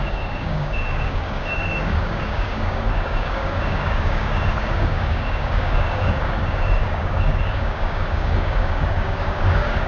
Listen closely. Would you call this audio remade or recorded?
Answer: remade